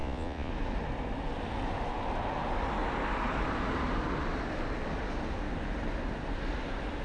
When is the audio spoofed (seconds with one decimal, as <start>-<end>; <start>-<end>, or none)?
0.0-0.5